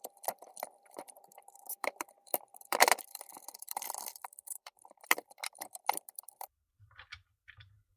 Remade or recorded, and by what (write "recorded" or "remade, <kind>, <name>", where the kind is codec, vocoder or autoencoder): remade, vocoder, BigVGAN v2